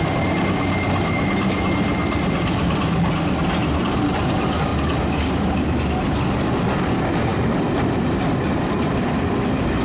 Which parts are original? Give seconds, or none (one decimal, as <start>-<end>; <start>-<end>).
0.0-3.6; 4.2-7.3; 9.3-9.8